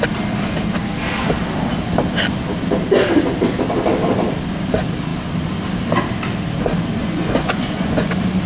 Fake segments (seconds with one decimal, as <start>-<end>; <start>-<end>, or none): 7.0-8.1